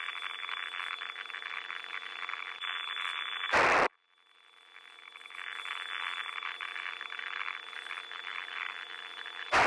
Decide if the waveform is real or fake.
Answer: real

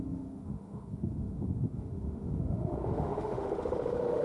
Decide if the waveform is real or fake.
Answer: fake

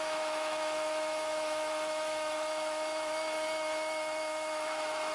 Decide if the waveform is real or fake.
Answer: fake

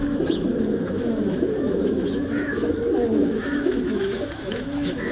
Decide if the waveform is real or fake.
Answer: fake